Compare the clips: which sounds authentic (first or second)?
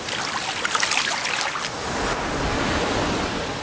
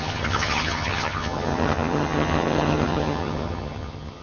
first